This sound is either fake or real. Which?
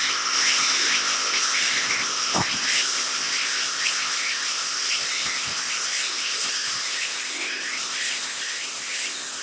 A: fake